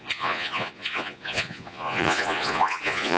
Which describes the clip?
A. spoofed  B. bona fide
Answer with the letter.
A